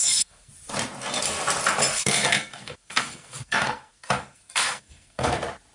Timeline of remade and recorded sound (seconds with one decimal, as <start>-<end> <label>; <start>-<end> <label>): 0.0-0.5 remade; 0.5-1.9 recorded; 1.9-5.3 remade; 5.3-5.7 recorded